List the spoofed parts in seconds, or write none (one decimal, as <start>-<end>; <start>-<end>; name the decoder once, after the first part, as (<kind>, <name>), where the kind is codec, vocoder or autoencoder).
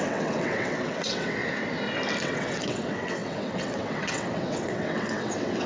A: 0.0-1.4 (vocoder, WaveNeXt); 2.2-5.7